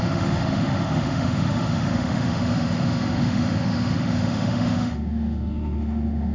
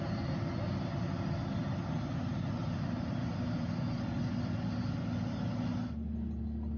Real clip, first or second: second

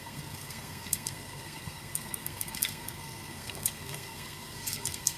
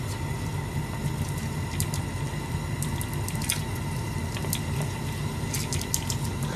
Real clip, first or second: second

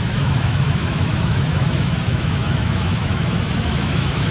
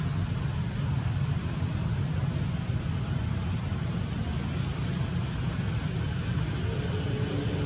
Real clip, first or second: second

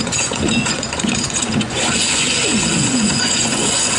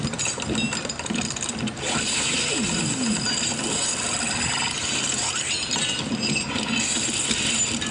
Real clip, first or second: second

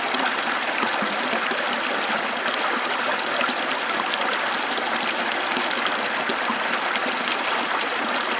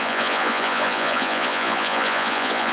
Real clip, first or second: first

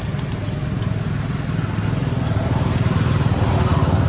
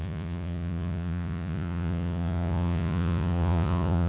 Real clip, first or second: first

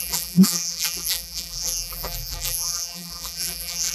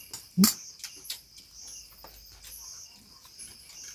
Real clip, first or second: second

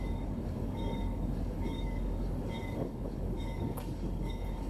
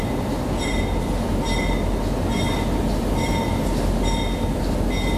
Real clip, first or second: second